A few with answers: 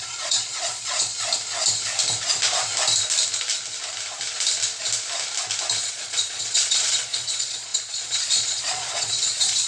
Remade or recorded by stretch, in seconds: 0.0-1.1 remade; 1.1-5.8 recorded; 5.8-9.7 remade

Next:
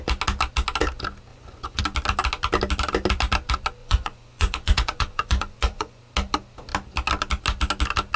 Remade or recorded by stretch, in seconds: 0.0-1.3 recorded; 1.3-1.8 remade; 1.8-3.8 recorded; 3.8-6.0 remade; 6.0-8.2 recorded

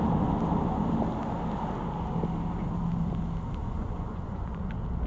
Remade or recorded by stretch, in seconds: 0.0-3.6 recorded; 3.6-4.6 remade; 4.6-5.1 recorded

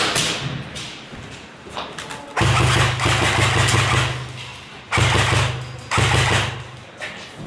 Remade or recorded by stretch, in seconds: 0.0-7.5 recorded